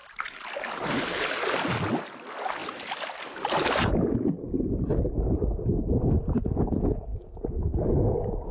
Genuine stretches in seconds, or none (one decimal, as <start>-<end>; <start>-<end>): 0.0-8.5